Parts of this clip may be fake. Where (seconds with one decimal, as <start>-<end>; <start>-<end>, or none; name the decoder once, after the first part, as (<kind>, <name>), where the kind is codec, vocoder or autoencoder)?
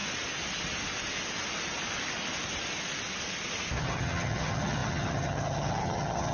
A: 3.8-6.3 (vocoder, HiFi-GAN)